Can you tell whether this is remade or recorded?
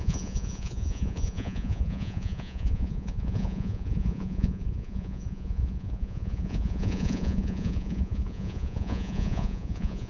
remade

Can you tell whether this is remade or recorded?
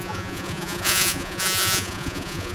remade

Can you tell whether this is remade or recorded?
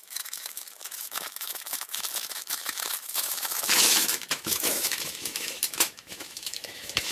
remade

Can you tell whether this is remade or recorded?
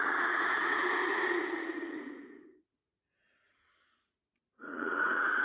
remade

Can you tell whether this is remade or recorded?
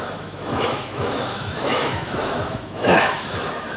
remade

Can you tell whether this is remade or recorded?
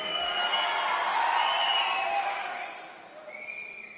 recorded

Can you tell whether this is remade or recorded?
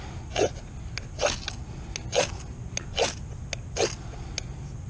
recorded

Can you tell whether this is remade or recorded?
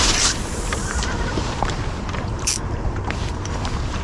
remade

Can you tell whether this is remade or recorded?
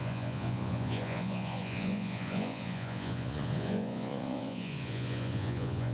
remade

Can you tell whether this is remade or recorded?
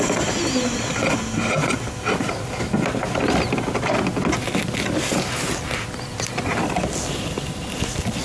recorded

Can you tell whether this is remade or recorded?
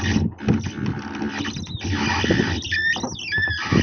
recorded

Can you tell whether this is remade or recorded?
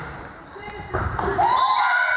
recorded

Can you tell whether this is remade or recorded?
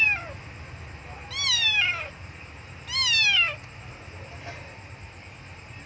recorded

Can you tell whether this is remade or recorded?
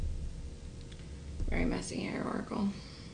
recorded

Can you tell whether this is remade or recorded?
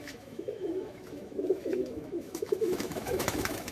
remade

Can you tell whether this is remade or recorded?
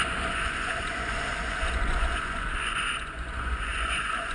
remade